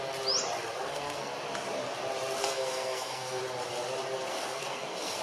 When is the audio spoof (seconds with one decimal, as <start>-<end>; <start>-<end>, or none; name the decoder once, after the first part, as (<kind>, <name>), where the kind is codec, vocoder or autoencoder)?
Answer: 0.8-1.3 (codec, SNAC); 2.4-3.4; 4.3-5.2